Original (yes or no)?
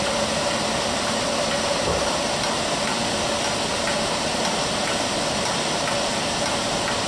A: yes